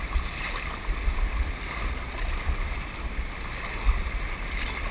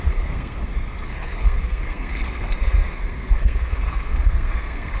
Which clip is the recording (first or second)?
first